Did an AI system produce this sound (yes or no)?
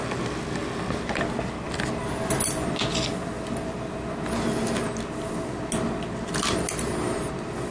no